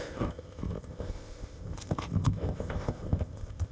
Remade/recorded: remade